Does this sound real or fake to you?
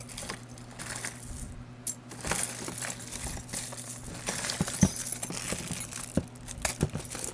real